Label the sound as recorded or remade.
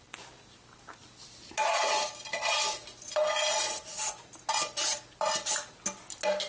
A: recorded